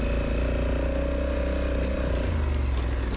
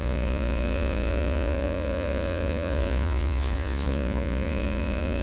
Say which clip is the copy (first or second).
second